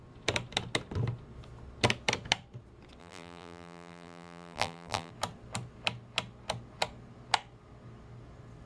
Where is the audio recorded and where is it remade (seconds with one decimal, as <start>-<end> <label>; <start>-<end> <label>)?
0.0-3.0 recorded; 3.0-5.1 remade; 5.1-8.7 recorded